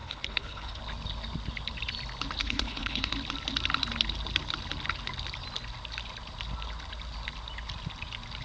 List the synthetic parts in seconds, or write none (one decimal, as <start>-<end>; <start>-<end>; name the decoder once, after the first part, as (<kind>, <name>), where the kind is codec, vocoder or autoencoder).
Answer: 0.0-0.8 (codec, HILCodec); 2.4-3.1